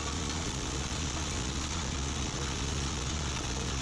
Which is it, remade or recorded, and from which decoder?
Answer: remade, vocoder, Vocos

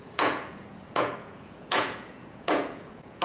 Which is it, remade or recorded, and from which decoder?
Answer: remade, vocoder, Vocos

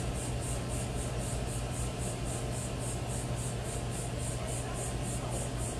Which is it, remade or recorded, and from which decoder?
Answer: recorded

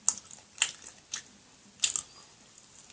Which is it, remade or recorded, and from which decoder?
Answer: recorded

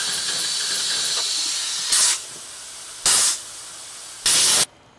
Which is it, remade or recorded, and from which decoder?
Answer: recorded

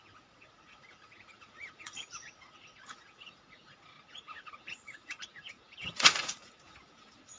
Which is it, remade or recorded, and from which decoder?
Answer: remade, vocoder, Vocos